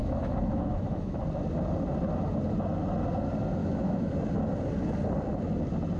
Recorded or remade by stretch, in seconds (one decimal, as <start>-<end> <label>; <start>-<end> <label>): 0.0-1.2 remade; 1.2-3.6 recorded; 3.6-4.1 remade; 4.1-6.0 recorded